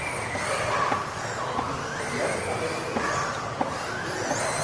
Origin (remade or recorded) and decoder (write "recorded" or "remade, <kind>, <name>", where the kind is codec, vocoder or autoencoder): recorded